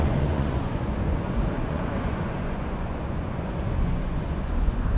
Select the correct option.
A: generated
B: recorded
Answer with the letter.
A